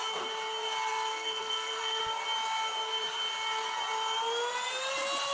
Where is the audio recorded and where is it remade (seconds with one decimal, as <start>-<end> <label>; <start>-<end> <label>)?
0.0-1.1 recorded; 1.1-2.0 remade; 2.0-5.3 recorded